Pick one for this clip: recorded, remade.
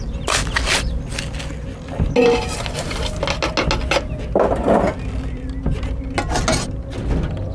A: recorded